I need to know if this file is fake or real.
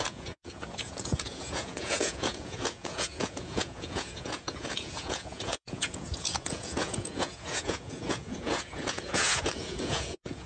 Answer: fake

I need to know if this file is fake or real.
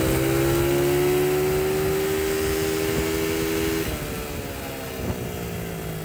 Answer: real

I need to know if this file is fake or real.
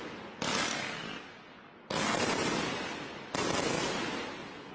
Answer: real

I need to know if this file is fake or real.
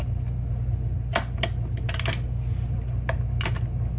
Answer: real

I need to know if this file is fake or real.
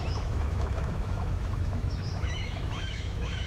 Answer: fake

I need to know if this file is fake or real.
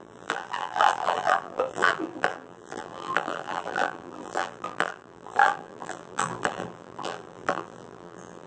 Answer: fake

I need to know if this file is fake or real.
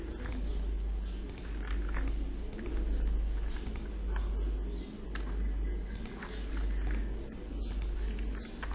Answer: real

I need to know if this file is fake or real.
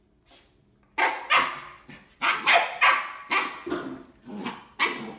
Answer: real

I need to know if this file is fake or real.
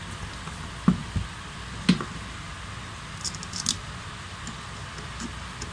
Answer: real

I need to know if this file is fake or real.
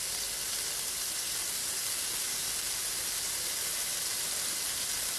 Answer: real